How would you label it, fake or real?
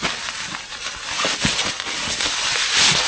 real